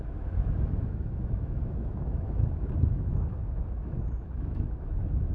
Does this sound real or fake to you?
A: fake